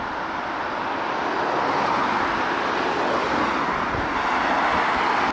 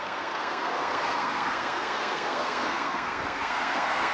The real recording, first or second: first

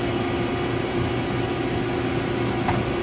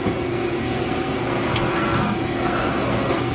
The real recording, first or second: first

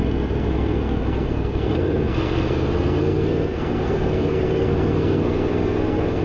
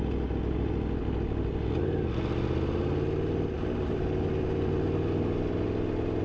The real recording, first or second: second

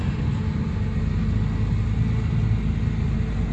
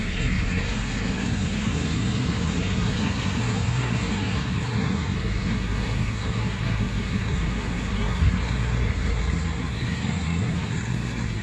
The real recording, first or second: first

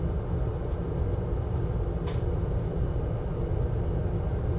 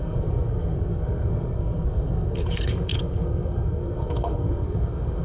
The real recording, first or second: first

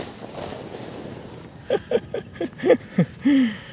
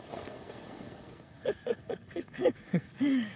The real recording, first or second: first